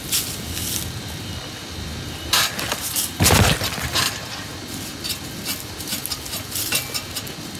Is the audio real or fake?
real